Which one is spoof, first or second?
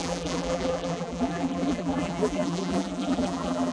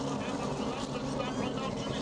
first